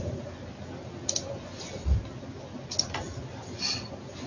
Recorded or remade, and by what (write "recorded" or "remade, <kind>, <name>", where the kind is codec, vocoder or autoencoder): recorded